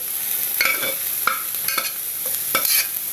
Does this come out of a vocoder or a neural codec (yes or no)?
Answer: no